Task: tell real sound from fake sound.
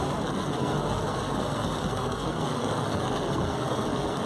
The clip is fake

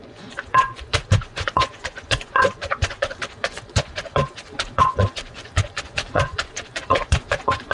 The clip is fake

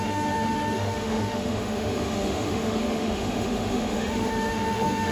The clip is fake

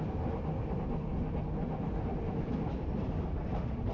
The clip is real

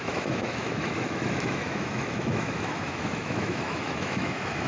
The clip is fake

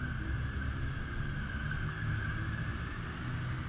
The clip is real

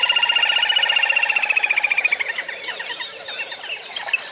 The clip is real